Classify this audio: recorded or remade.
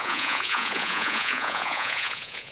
remade